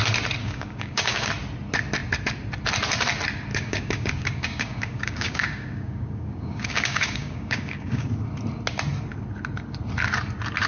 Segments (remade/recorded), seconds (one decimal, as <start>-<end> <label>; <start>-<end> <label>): 0.0-0.4 recorded; 0.4-1.3 remade; 1.3-3.5 recorded; 3.5-8.1 remade; 8.1-10.7 recorded